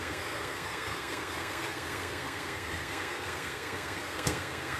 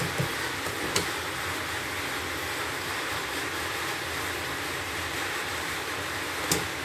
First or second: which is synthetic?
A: first